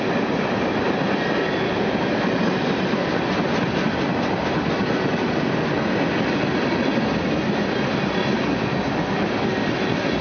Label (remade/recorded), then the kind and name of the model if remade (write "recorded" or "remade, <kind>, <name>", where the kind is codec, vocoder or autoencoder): recorded